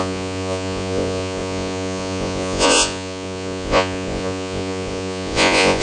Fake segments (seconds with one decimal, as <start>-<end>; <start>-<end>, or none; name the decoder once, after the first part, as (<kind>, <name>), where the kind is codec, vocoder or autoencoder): 0.0-5.8 (vocoder, Vocos)